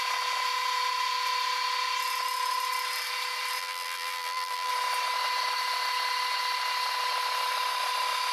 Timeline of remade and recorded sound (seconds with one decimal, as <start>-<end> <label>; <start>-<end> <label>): 0.0-3.6 recorded; 3.6-4.7 remade; 4.7-8.3 recorded